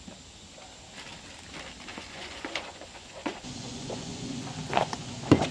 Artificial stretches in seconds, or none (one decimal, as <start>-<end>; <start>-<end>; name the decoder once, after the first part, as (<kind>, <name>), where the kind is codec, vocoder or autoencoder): 1.9-5.5 (vocoder, Vocos)